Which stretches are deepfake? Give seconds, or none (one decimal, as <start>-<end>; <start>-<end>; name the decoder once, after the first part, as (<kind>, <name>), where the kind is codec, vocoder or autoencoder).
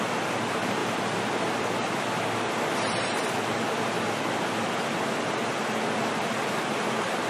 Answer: none